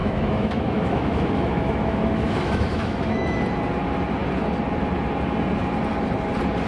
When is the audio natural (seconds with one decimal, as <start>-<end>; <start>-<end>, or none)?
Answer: 3.4-6.7